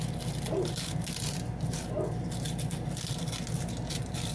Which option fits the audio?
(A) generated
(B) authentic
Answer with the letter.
B